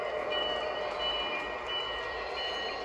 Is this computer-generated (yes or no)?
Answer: yes